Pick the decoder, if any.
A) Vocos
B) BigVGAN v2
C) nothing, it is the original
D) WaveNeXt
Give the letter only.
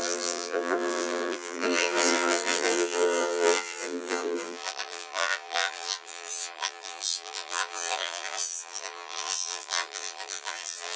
B